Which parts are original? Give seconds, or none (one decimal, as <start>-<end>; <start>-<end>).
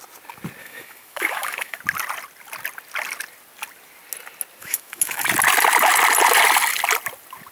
0.0-0.6; 1.8-4.6; 5.2-7.5